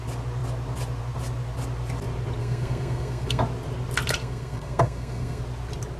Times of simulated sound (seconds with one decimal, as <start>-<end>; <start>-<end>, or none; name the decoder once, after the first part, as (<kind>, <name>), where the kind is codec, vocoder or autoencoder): 2.4-3.4 (codec, SNAC); 4.2-5.4